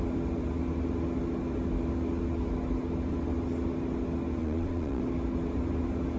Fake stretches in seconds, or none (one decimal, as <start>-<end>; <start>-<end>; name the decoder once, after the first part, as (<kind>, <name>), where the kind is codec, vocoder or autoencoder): 4.4-5.0 (vocoder, Vocos)